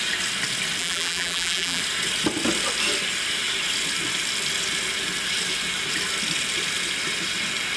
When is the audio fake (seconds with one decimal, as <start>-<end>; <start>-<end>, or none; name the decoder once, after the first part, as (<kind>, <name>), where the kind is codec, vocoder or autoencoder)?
0.8-1.8 (vocoder, BigVGAN v2)